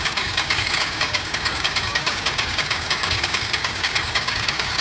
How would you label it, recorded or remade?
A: remade